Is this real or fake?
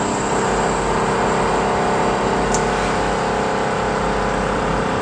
real